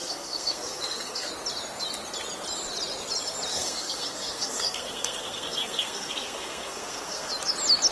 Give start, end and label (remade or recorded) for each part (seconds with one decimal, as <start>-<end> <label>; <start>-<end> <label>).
0.0-1.3 remade; 1.3-3.5 recorded; 3.5-7.3 remade; 7.3-7.9 recorded